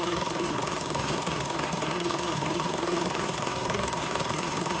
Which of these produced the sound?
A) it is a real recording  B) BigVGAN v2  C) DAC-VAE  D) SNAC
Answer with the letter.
D